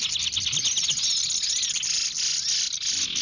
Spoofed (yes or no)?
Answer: no